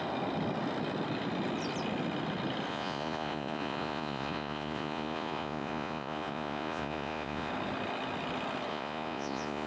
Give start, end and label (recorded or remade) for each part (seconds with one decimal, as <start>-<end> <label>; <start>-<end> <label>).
0.0-2.7 recorded; 2.7-7.5 remade; 7.5-8.7 recorded; 8.7-9.7 remade